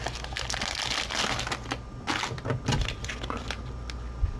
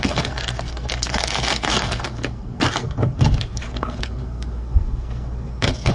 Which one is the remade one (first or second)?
second